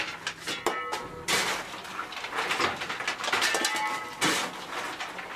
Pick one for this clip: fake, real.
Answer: real